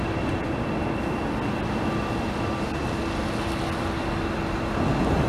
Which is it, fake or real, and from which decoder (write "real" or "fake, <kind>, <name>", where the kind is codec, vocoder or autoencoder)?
real